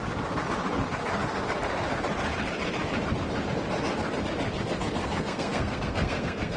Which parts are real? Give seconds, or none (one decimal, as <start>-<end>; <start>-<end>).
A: 0.0-5.0